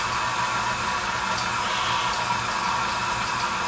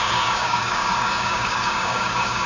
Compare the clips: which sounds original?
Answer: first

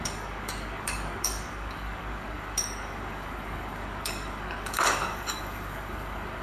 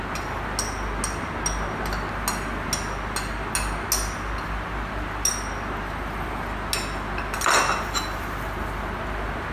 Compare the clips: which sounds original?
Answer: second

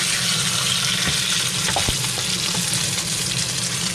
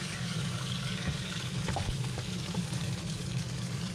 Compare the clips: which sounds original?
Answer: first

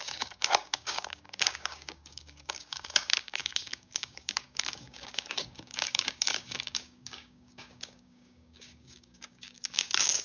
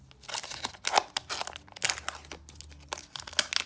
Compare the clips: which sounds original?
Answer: second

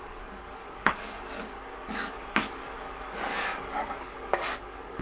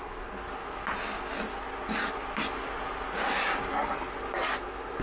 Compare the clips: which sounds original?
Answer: second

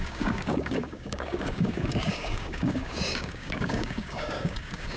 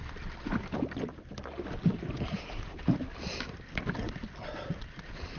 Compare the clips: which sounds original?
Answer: second